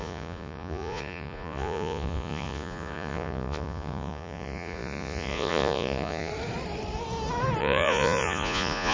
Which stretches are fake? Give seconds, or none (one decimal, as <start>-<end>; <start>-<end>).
0.0-6.3; 7.6-8.9